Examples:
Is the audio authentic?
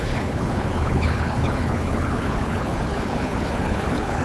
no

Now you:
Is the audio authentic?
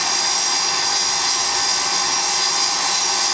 yes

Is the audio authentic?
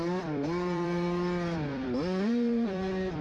no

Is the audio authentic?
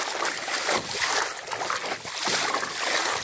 yes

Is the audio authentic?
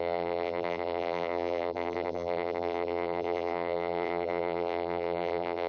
no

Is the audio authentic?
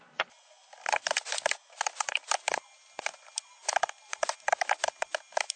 yes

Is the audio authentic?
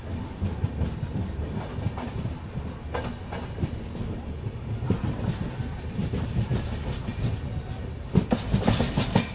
yes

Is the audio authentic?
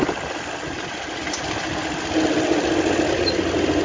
yes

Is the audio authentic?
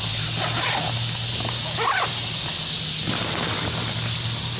yes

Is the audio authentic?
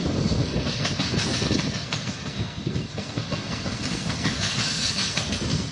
no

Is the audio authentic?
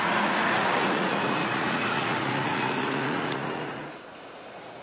no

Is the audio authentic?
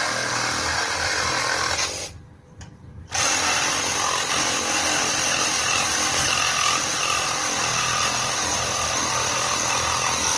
yes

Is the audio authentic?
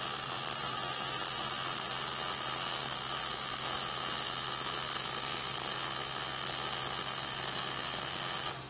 yes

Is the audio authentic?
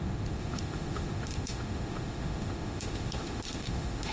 no